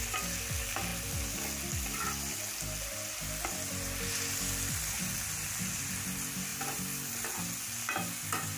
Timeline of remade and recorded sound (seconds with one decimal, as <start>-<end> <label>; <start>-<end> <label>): 0.0-8.6 recorded